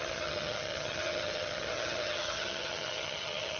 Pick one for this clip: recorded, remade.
remade